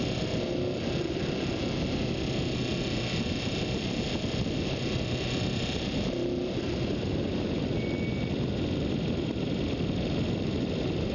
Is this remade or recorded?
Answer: recorded